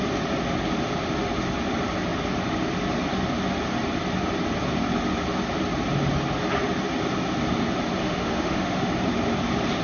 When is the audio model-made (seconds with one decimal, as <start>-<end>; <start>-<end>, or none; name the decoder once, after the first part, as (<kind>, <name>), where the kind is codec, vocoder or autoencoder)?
8.0-8.9 (autoencoder, DAC-VAE)